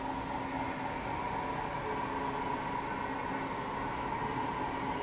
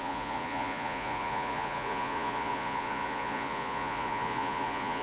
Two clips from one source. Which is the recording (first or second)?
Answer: first